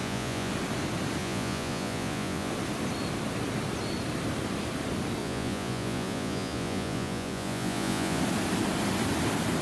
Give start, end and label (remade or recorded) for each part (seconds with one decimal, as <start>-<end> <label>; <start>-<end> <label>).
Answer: 0.0-0.5 remade; 0.5-1.2 recorded; 1.2-2.5 remade; 2.5-5.2 recorded; 5.2-8.2 remade; 8.2-9.6 recorded